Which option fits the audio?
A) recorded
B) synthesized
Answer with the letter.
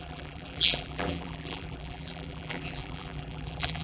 B